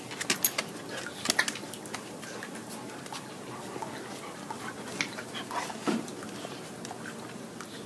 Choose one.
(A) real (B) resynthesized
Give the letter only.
A